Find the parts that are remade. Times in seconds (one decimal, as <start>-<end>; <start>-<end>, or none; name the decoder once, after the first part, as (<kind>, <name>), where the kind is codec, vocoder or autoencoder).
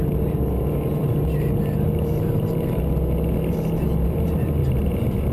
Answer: 1.0-2.8 (vocoder, BigVGAN v2); 4.6-5.3